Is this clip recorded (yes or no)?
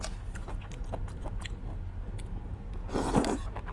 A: yes